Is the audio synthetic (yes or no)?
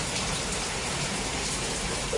yes